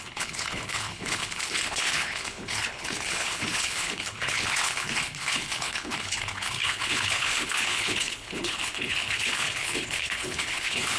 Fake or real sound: fake